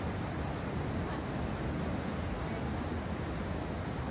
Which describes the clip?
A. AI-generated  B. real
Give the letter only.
B